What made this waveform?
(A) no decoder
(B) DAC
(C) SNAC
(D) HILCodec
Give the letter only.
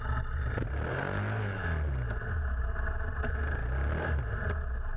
A